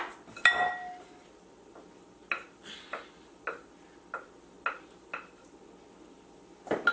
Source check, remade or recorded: recorded